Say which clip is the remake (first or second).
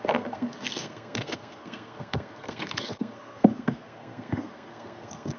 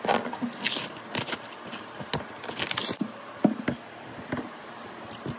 first